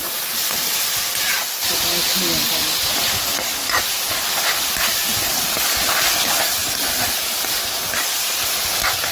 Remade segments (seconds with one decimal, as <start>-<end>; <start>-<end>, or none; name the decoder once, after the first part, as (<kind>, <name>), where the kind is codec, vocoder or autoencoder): none